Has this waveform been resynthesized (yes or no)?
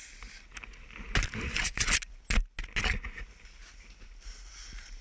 no